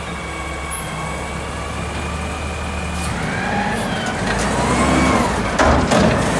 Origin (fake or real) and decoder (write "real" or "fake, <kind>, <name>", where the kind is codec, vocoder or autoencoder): real